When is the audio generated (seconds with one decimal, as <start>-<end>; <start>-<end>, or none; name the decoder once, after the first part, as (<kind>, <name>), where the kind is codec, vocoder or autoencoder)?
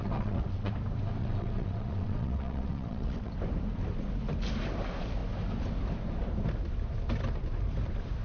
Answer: 0.0-0.7 (vocoder, WaveNeXt); 1.2-3.3